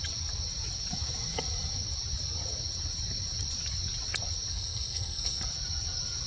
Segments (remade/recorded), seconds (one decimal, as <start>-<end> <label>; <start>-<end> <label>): 0.0-4.5 recorded; 4.5-5.4 remade; 5.4-6.3 recorded